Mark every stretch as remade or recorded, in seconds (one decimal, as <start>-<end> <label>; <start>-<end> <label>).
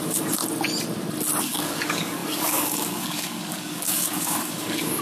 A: 0.0-0.4 remade; 0.4-1.4 recorded; 1.4-5.0 remade